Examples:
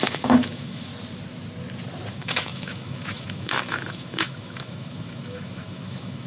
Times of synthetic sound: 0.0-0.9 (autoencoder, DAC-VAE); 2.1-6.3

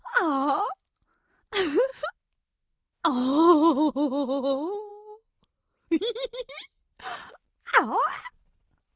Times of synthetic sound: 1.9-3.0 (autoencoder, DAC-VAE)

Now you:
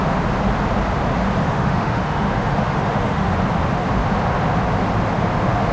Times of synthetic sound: 1.4-3.3 (autoencoder, DAC-VAE)

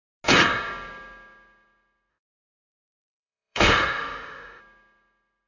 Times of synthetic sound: 2.1-4.6 (autoencoder, DAC-VAE)